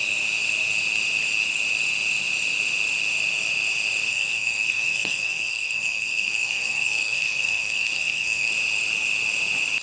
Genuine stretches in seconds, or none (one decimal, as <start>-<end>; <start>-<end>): 0.0-4.1; 8.5-9.8